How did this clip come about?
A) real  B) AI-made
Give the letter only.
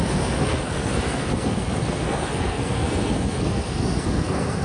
B